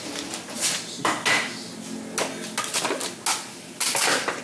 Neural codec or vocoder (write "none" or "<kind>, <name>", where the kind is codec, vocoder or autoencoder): none